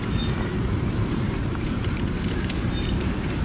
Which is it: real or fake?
fake